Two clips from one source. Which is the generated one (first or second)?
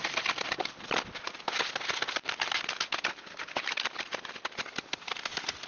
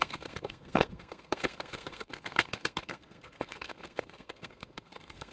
second